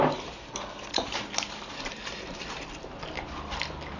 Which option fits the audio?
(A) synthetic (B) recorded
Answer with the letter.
B